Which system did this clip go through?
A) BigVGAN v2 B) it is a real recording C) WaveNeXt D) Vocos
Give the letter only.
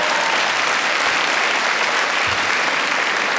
B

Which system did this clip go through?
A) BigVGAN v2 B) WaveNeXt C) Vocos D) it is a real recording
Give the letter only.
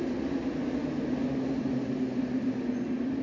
D